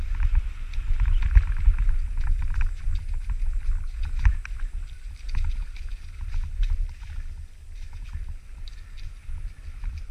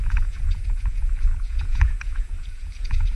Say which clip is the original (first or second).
first